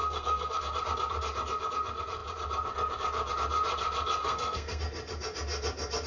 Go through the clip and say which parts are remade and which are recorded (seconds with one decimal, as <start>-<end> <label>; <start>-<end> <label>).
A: 0.0-0.6 remade; 0.6-4.2 recorded; 4.2-4.8 remade; 4.8-6.1 recorded